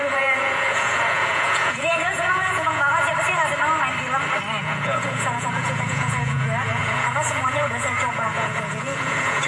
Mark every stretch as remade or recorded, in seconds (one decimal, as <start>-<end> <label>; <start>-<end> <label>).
0.0-3.1 remade; 3.1-4.6 recorded; 4.6-9.5 remade